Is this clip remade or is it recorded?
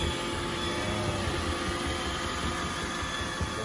recorded